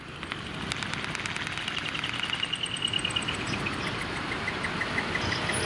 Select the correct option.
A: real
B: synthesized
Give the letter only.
A